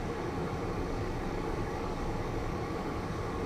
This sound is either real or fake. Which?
fake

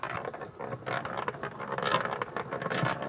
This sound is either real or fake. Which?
real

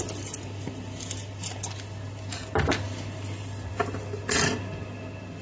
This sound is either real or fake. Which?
real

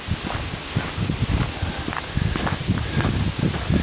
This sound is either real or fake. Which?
real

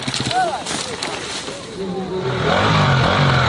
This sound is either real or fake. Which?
real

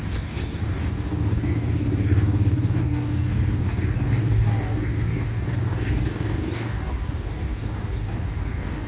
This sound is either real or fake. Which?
fake